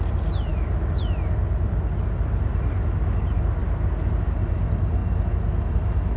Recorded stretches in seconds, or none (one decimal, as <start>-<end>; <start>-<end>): 0.0-0.5; 1.3-6.2